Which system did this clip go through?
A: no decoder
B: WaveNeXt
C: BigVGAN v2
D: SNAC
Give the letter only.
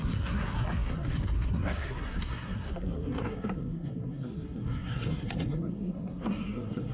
D